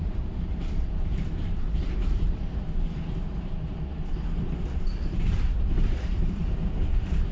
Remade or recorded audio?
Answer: remade